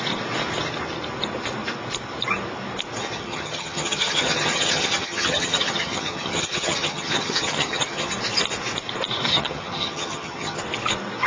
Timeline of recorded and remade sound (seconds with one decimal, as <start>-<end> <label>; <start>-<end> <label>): 0.0-3.0 recorded; 3.0-8.1 remade; 8.1-9.3 recorded; 9.3-10.6 remade; 10.6-11.3 recorded